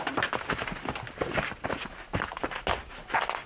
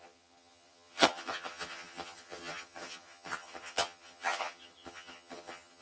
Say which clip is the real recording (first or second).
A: first